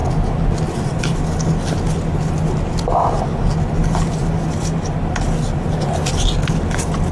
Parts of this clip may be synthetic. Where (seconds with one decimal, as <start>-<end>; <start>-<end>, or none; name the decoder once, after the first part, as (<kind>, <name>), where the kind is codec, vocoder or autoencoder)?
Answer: none